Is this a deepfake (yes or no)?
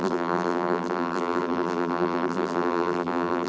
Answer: yes